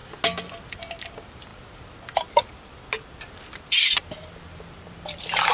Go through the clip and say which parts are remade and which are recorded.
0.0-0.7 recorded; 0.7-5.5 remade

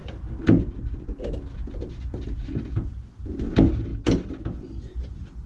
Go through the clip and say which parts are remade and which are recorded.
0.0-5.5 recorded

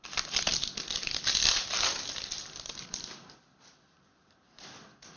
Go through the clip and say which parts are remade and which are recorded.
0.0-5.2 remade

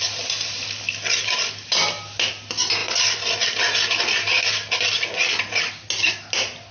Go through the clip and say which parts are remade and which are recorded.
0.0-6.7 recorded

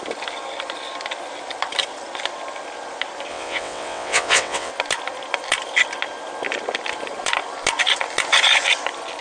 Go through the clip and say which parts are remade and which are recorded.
0.0-3.3 recorded; 3.3-4.7 remade; 4.7-9.2 recorded

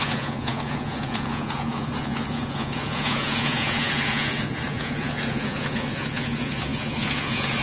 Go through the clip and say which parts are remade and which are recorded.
0.0-7.6 remade

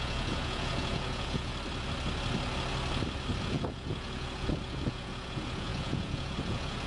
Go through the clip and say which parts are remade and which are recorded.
0.0-1.5 remade; 1.5-3.4 recorded; 3.4-6.9 remade